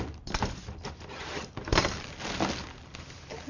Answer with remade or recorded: recorded